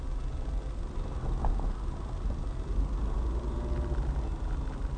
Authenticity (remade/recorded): recorded